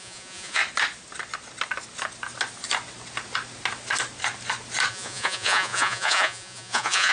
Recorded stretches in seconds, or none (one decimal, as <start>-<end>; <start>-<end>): 0.6-4.9